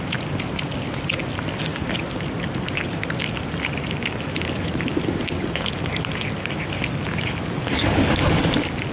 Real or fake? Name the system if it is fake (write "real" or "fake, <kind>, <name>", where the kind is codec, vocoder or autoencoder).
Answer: real